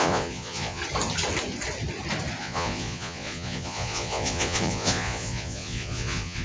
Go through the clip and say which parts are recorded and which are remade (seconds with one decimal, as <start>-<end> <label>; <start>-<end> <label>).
0.0-0.8 remade; 0.8-2.4 recorded; 2.4-6.4 remade